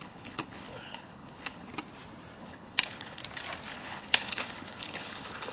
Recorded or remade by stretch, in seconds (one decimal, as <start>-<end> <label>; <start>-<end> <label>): 0.0-1.7 remade; 1.7-2.4 recorded; 2.4-3.2 remade; 3.2-3.7 recorded; 3.7-5.5 remade